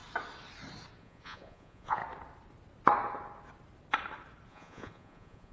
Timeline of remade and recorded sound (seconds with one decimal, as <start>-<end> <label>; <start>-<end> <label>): 0.0-1.0 recorded; 1.0-2.0 remade; 2.0-4.5 recorded; 4.5-5.5 remade